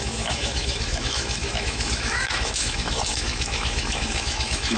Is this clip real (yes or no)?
no